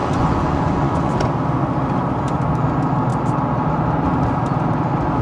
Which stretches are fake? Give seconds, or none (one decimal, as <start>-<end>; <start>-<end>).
0.0-1.3